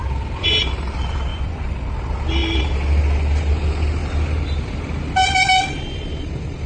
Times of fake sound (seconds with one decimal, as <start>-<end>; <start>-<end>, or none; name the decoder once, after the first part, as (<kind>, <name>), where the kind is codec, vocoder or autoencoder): 1.3-1.9 (vocoder, Vocos)